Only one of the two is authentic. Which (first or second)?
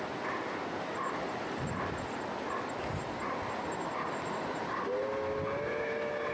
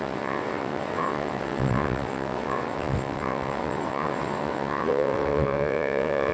first